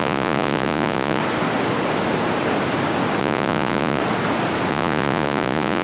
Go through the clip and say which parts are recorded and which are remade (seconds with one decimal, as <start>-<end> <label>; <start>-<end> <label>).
0.0-1.2 remade; 1.2-3.2 recorded; 3.2-4.0 remade; 4.0-4.7 recorded; 4.7-5.8 remade